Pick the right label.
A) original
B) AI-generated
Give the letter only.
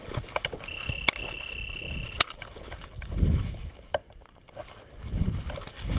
A